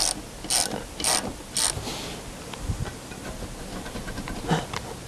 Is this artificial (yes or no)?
no